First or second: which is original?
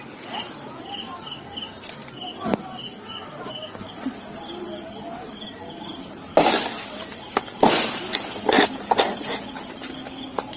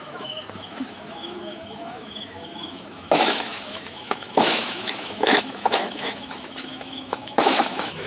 first